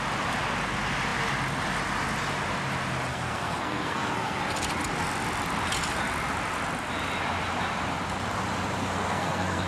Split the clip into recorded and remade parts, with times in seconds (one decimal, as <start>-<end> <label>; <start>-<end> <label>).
0.0-3.1 recorded; 3.1-4.4 remade; 4.4-8.8 recorded; 8.8-9.7 remade

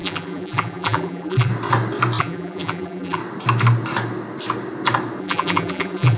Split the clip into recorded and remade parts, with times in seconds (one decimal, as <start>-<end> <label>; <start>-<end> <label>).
0.0-1.5 remade; 1.5-2.2 recorded; 2.2-3.2 remade; 3.2-5.2 recorded; 5.2-6.2 remade

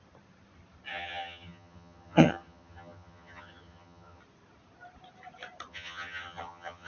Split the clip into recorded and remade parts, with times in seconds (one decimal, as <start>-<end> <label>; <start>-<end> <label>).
0.0-0.9 recorded; 0.9-4.2 remade; 4.2-5.7 recorded; 5.7-6.9 remade

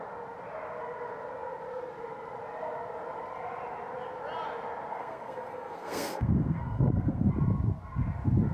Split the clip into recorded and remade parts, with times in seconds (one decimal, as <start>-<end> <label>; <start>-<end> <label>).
0.0-4.9 recorded; 4.9-7.3 remade; 7.3-8.5 recorded

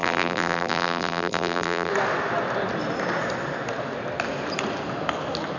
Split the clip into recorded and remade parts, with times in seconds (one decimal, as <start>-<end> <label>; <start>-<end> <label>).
0.0-1.9 remade; 1.9-5.6 recorded

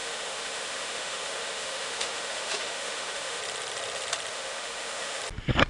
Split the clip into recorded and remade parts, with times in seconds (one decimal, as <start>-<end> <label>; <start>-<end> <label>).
0.0-3.4 remade; 3.4-4.3 recorded; 4.3-5.2 remade; 5.2-5.7 recorded

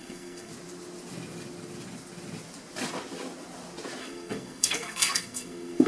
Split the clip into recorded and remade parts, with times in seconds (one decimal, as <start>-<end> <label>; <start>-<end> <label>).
0.0-0.5 remade; 0.5-4.0 recorded; 4.0-5.9 remade